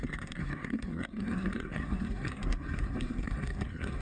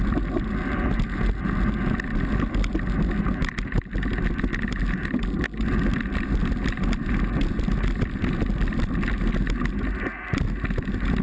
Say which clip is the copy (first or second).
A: first